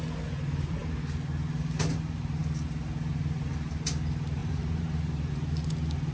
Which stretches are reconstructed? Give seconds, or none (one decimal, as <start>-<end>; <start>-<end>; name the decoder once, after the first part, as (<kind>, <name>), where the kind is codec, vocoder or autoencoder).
4.4-5.3 (vocoder, BigVGAN v2)